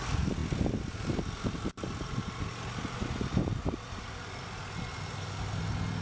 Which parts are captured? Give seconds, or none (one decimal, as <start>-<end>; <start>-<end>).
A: 0.0-6.0